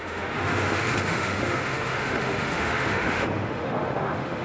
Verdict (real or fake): fake